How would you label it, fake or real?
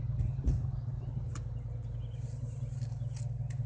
real